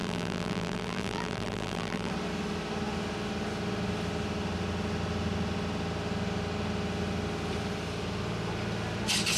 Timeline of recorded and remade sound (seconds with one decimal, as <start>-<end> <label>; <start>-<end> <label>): 0.0-2.1 remade; 2.1-9.4 recorded